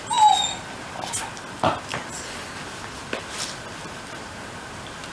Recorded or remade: recorded